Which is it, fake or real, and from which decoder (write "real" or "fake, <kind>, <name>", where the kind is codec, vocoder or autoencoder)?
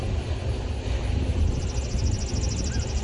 real